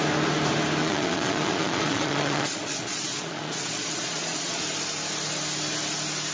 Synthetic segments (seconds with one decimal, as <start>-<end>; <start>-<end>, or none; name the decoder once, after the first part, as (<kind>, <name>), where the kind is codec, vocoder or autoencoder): 0.8-4.6 (vocoder, Vocos)